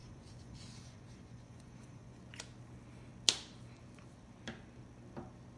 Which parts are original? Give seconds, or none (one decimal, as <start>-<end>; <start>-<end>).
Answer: 2.2-5.6